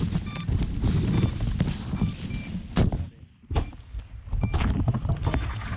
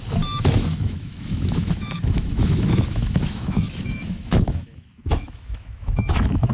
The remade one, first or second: second